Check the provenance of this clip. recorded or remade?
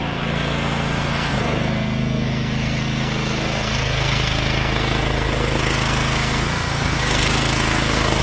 remade